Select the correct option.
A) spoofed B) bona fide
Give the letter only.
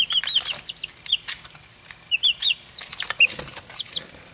B